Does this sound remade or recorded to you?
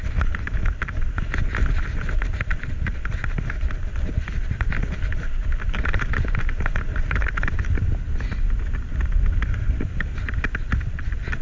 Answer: recorded